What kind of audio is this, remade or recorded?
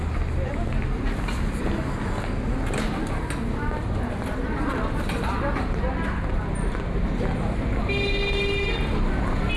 recorded